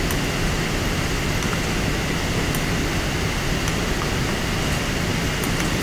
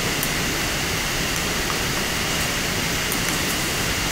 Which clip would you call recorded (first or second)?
first